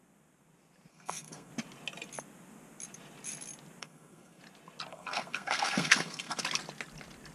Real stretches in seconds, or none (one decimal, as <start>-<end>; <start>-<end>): 0.0-0.9; 1.5-3.8; 4.4-4.9; 6.4-7.3